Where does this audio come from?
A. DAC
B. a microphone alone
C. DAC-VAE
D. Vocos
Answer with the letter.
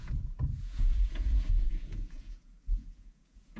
D